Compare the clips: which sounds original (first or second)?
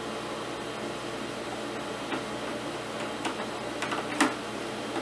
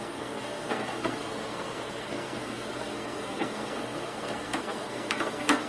first